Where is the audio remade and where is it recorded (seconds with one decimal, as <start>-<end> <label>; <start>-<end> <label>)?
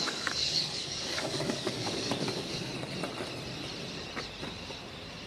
0.0-2.7 remade; 2.7-5.3 recorded